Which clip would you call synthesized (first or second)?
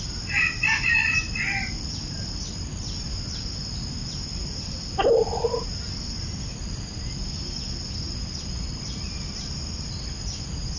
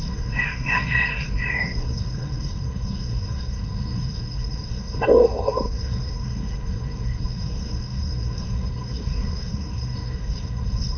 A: second